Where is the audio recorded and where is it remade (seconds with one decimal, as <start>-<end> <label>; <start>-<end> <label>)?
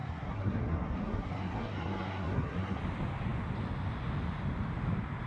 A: 0.0-2.8 remade; 2.8-5.3 recorded